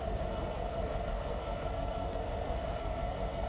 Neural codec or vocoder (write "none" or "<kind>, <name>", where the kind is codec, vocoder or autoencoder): codec, SNAC